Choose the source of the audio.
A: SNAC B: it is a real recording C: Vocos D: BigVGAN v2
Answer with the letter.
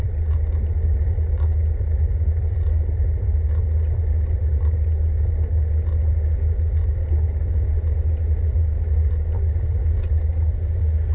B